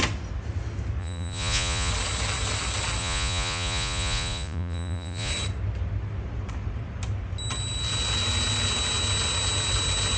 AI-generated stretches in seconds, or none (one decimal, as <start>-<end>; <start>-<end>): 1.0-1.9; 3.0-5.3